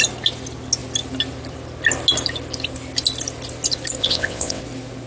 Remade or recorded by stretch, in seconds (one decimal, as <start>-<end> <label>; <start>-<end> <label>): 0.0-4.0 recorded; 4.0-4.6 remade; 4.6-5.1 recorded